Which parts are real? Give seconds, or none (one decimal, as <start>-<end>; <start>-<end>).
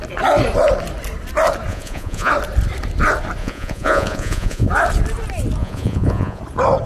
0.0-1.7; 2.3-3.4; 4.7-5.6; 6.4-6.9